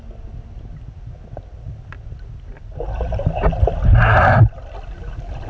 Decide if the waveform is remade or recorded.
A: recorded